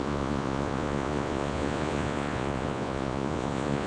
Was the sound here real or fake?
fake